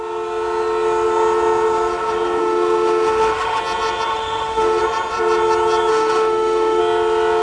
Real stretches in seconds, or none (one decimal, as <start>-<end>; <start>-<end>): 0.0-2.4; 3.6-4.1; 4.8-5.9; 6.8-7.4